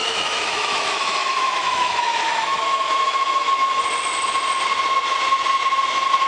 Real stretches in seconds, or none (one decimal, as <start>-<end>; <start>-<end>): 3.8-6.3